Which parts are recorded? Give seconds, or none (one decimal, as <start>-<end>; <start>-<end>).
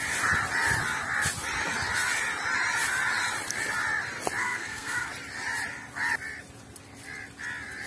0.0-4.4; 5.1-7.9